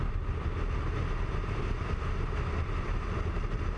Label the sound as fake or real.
real